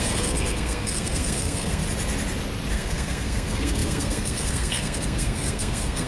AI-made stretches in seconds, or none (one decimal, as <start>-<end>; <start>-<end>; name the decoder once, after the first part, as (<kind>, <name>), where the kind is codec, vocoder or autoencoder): 0.0-1.8 (codec, SNAC); 2.7-6.1